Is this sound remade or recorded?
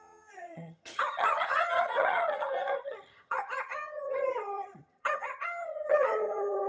remade